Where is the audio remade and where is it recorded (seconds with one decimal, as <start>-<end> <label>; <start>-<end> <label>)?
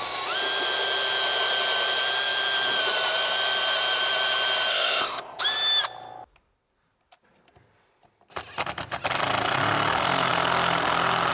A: 0.0-4.7 recorded; 4.7-5.4 remade; 5.4-11.3 recorded